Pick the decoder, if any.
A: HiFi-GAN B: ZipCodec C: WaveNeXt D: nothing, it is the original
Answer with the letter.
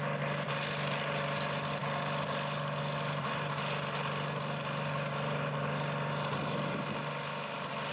D